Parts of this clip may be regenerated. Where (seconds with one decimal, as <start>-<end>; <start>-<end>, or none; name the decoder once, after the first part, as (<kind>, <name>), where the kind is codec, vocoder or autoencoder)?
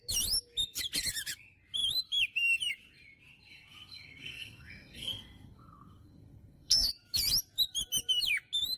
3.5-6.9 (codec, SNAC)